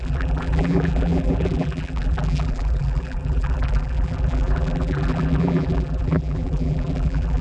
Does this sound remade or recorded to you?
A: remade